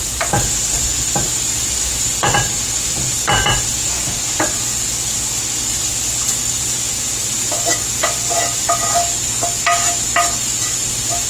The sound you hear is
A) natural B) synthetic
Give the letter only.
A